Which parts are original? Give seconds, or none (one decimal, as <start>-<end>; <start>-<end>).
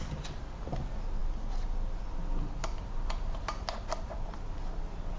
0.0-5.2